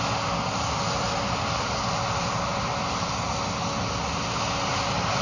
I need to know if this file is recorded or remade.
recorded